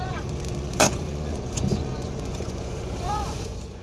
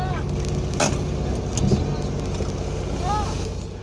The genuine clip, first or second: second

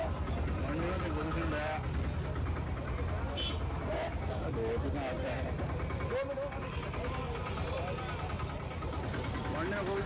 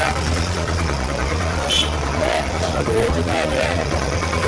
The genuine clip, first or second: first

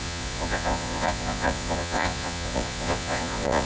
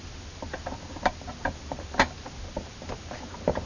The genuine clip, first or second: second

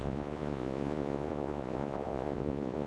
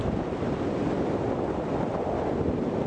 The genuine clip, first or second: second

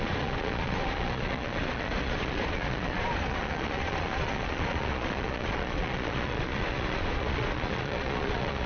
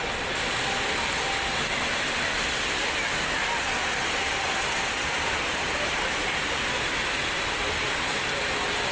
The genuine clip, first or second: second